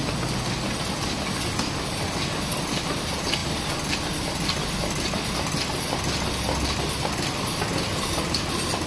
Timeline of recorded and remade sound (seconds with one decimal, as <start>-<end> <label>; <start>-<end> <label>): 0.0-8.9 recorded